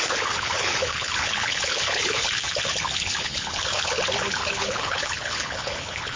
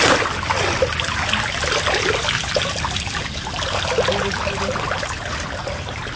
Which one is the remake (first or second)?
first